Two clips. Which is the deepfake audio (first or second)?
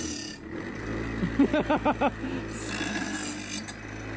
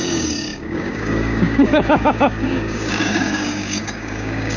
second